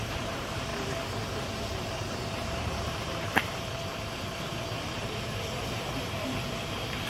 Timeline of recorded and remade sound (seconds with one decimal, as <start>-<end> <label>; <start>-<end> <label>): 0.0-0.7 remade; 0.7-1.8 recorded; 1.8-7.1 remade